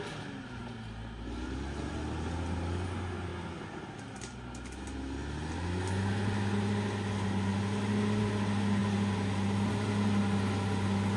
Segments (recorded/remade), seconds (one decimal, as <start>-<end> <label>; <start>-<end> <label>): 0.0-11.2 recorded